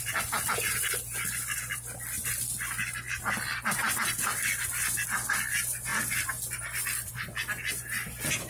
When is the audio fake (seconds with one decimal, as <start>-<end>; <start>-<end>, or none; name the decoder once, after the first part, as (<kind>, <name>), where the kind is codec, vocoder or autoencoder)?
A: none